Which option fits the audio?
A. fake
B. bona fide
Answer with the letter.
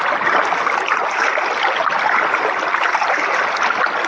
B